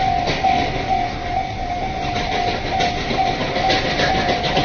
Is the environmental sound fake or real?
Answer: real